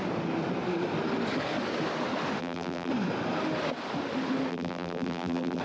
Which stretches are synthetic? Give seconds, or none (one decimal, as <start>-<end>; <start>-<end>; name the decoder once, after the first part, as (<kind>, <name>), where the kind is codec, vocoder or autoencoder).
2.4-2.9 (vocoder, BigVGAN v2); 4.5-5.6